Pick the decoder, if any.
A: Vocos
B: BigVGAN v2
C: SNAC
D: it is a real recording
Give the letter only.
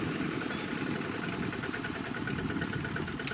D